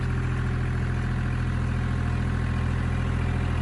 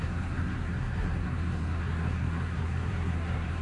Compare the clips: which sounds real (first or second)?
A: first